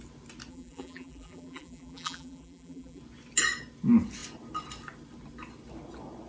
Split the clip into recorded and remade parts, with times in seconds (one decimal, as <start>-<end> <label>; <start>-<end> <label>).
0.0-0.5 recorded; 0.5-3.0 remade; 3.0-6.3 recorded